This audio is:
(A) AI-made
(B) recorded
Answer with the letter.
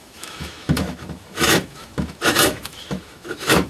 A